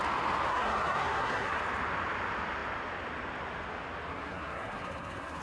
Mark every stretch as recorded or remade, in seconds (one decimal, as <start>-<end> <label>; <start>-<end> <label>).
0.0-0.5 recorded; 0.5-1.6 remade; 1.6-4.1 recorded; 4.1-5.4 remade